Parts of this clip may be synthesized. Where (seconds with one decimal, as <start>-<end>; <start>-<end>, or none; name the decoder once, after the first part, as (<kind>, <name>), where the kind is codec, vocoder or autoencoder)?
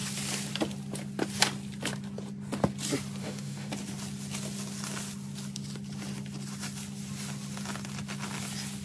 3.2-3.7 (autoencoder, DAC-VAE)